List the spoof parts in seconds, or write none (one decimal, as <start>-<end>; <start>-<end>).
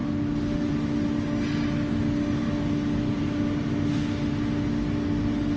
none